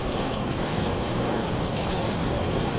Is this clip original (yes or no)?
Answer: no